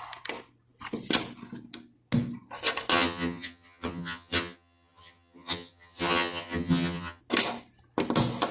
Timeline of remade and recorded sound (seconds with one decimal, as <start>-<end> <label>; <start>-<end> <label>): 0.0-2.9 recorded; 2.9-7.2 remade; 7.2-8.5 recorded